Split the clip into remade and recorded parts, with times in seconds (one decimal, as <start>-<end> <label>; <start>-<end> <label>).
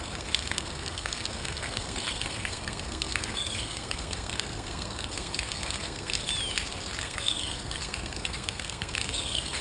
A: 0.0-6.3 remade; 6.3-7.0 recorded; 7.0-9.6 remade